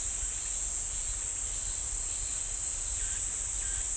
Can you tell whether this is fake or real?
real